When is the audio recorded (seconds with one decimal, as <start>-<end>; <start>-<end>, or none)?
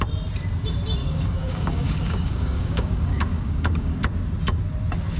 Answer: 0.0-1.0; 4.0-5.2